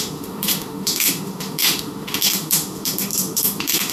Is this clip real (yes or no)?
no